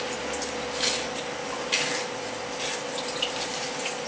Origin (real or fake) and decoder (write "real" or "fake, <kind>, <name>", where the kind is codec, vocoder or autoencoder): real